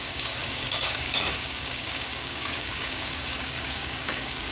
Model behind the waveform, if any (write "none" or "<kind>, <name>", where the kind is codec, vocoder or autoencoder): codec, DAC